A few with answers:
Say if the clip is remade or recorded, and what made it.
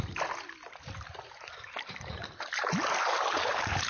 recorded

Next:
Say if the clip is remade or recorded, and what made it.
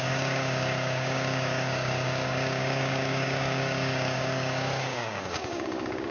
remade, codec, DAC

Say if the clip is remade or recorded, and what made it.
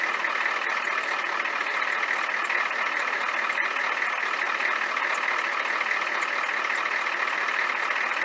recorded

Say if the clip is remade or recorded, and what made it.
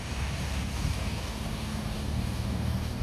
remade, codec, DAC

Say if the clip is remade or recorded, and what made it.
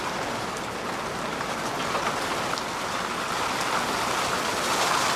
recorded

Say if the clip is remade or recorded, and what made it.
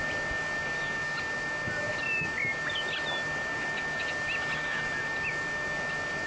recorded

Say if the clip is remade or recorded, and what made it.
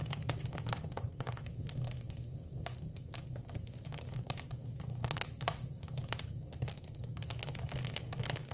remade, codec, DAC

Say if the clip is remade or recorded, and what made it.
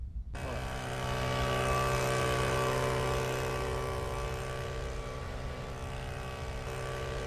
recorded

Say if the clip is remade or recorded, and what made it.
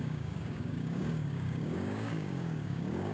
remade, codec, DAC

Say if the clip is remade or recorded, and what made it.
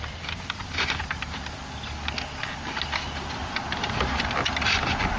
recorded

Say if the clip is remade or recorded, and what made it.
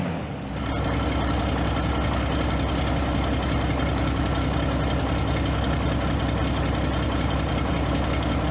recorded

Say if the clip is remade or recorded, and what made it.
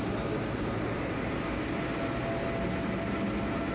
recorded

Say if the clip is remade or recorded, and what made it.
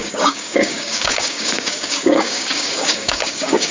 remade, codec, DAC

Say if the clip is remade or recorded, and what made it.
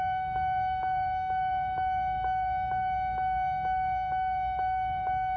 remade, codec, DAC